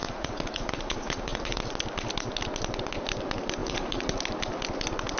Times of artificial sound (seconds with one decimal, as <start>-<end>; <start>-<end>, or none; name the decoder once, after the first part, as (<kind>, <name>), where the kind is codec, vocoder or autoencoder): 0.0-1.6 (vocoder, Vocos); 3.6-4.2

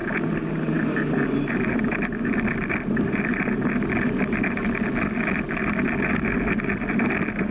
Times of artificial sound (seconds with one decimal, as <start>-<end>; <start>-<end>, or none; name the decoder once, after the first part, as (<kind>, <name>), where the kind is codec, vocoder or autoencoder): none

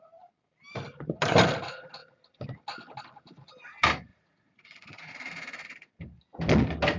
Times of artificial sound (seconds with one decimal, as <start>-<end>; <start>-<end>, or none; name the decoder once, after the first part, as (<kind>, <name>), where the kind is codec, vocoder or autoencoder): 4.1-5.9 (vocoder, Vocos)

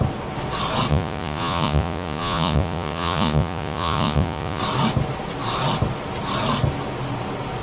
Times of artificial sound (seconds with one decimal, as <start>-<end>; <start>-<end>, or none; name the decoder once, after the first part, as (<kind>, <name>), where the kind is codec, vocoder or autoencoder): 0.9-4.6 (vocoder, Vocos)

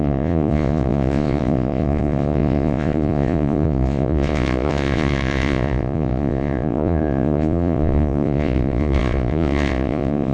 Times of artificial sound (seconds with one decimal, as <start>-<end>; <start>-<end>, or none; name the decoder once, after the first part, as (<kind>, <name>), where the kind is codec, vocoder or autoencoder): 0.0-10.3 (vocoder, Vocos)